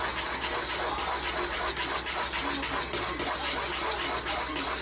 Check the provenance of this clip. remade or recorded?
recorded